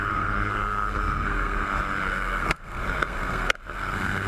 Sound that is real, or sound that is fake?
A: fake